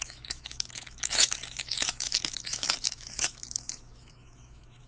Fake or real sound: fake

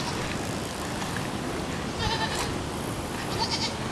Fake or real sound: real